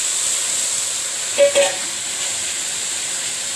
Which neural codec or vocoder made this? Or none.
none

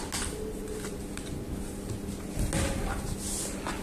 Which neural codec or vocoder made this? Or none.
none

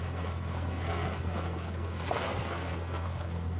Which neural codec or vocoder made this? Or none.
codec, SNAC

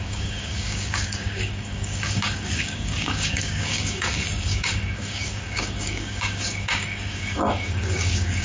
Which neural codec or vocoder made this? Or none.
codec, DAC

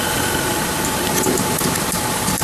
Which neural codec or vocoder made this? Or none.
vocoder, BigVGAN v2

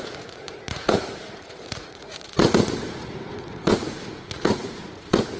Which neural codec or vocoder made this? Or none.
vocoder, Vocos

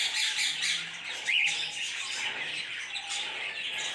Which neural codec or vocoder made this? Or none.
none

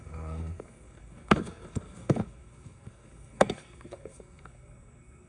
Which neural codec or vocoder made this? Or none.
codec, SNAC